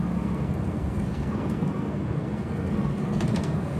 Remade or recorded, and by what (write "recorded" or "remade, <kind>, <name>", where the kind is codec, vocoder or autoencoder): remade, codec, SNAC